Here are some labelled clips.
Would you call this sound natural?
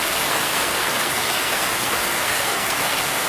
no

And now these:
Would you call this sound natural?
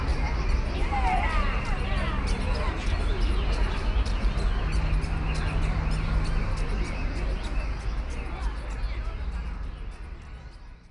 yes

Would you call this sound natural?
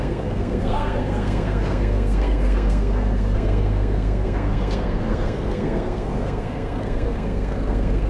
no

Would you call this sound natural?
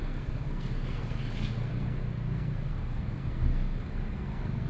no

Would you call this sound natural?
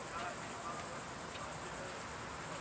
yes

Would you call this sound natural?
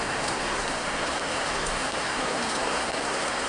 no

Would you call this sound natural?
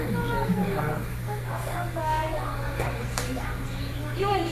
no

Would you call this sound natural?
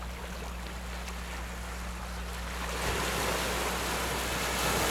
yes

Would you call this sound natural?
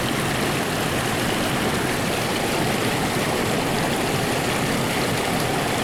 yes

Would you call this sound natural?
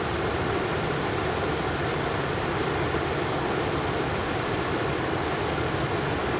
yes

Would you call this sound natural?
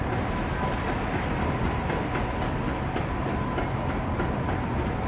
yes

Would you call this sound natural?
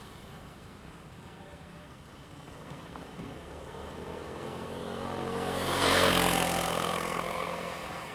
no